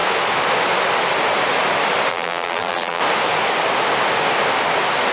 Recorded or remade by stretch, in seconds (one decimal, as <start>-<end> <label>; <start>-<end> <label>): 0.0-2.1 recorded; 2.1-3.0 remade; 3.0-5.1 recorded